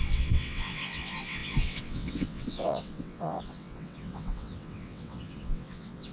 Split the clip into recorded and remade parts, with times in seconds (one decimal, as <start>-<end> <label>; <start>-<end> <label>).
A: 0.0-6.1 remade